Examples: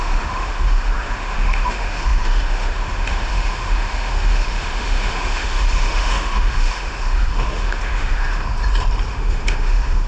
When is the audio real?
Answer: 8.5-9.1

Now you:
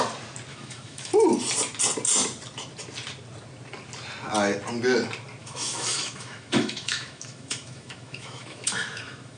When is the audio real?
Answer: 0.0-0.5; 1.1-5.4

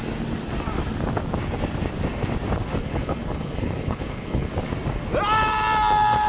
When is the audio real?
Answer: 0.0-2.8; 4.5-6.3

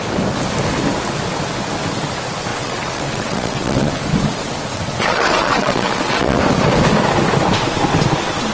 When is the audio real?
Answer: 0.0-2.5; 3.9-4.7; 6.4-8.5

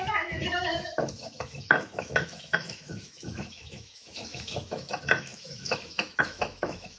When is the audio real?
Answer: none

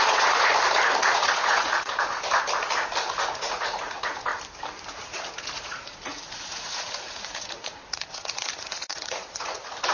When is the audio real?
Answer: 0.5-1.0; 1.9-3.2; 4.3-4.9

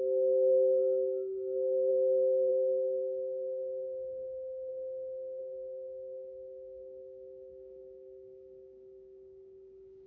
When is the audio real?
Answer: 4.7-5.4